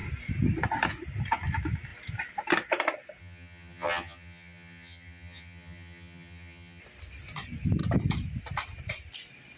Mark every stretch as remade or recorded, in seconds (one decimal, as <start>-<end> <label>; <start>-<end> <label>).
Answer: 0.0-3.2 recorded; 3.2-6.8 remade; 6.8-9.6 recorded